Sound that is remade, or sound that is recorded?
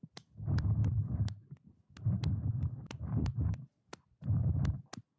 recorded